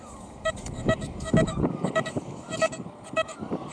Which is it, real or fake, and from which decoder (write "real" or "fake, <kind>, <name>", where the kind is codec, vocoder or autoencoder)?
fake, codec, DAC